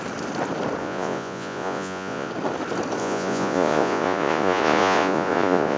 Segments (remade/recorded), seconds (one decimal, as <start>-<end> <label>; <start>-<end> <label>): 0.0-0.8 recorded; 0.8-2.3 remade; 2.3-3.0 recorded; 3.0-5.8 remade